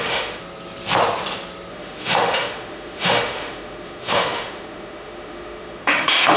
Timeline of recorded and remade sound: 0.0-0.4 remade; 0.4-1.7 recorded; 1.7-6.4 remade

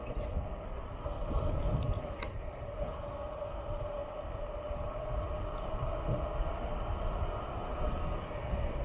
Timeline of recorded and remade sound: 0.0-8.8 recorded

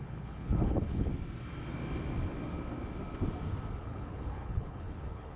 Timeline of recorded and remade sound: 0.0-1.1 remade; 1.1-3.8 recorded; 3.8-5.4 remade

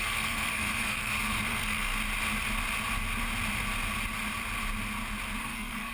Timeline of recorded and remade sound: 0.0-1.9 remade; 1.9-5.4 recorded; 5.4-5.9 remade

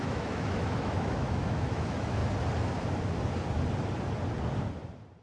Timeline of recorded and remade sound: 0.0-2.2 remade; 2.2-5.2 recorded

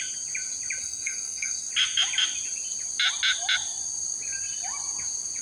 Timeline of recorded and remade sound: 0.0-0.8 recorded; 0.8-1.7 remade; 1.7-5.4 recorded

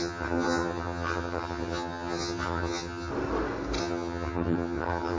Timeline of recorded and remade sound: 0.0-3.1 remade; 3.1-3.8 recorded; 3.8-5.2 remade

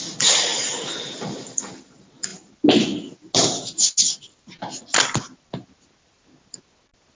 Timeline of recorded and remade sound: 0.0-7.1 recorded